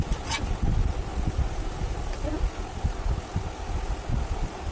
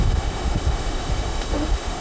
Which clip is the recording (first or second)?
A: first